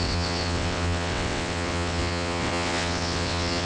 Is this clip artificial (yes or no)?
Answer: yes